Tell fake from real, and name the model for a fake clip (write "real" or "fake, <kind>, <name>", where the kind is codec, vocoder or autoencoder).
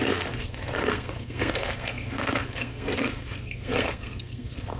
fake, codec, SNAC